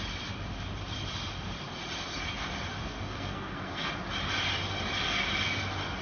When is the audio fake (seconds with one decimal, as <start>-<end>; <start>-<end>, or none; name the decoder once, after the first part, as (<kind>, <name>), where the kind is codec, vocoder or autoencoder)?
2.8-3.9 (codec, SNAC)